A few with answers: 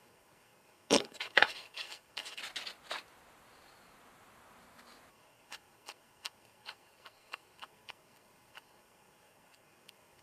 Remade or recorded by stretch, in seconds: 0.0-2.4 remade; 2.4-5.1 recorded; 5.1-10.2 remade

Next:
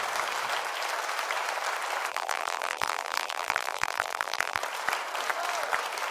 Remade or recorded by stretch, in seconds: 0.0-2.1 recorded; 2.1-4.6 remade; 4.6-6.1 recorded